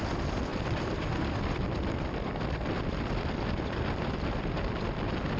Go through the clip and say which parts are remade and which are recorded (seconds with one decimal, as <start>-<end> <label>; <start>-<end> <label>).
0.0-0.5 recorded; 0.5-3.2 remade; 3.2-5.4 recorded